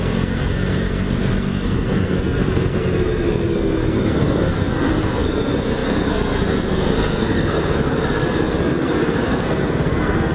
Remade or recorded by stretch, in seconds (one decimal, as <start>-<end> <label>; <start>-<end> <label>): 0.0-10.3 remade